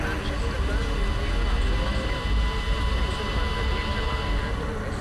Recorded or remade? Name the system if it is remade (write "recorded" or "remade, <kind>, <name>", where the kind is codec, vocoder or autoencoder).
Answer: recorded